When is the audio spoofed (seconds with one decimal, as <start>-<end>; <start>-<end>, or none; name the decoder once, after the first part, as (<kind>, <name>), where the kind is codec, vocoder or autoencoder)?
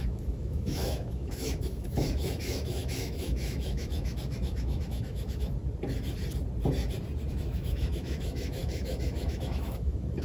0.0-5.6 (autoencoder, DAC-VAE); 7.3-10.2